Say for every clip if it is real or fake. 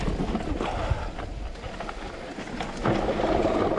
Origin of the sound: real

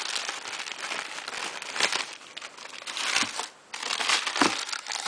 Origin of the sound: real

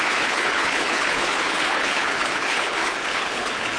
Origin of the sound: fake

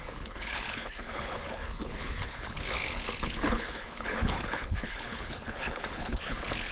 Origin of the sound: fake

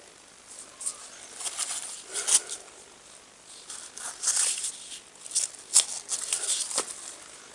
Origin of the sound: real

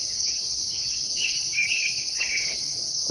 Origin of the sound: fake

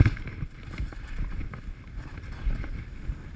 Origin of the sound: real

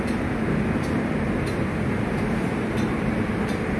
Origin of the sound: real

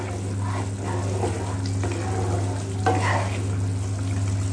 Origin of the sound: real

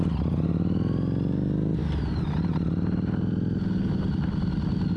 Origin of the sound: real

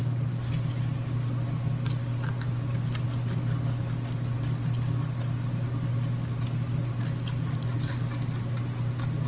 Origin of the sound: real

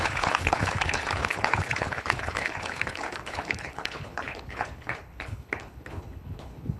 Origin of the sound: fake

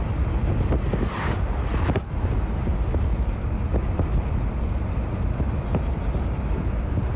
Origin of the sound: real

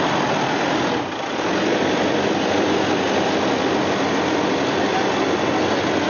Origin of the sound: real